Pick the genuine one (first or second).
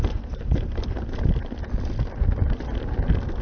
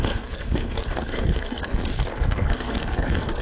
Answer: first